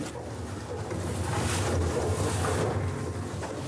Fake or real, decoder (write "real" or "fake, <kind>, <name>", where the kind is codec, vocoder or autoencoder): real